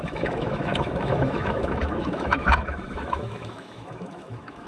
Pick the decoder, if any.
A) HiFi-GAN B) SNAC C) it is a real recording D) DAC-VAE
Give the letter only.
D